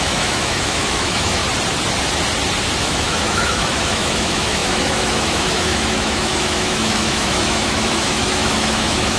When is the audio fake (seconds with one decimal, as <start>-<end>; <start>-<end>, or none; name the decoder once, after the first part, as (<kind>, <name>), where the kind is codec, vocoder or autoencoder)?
0.0-1.4 (autoencoder, DAC-VAE); 2.8-9.2